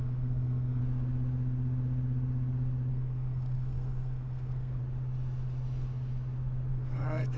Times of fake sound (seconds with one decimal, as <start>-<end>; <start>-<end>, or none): 0.0-0.8; 2.9-4.8; 6.7-7.4